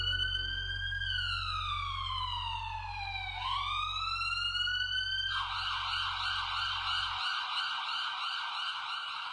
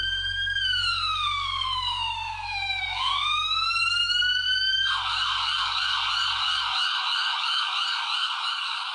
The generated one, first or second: second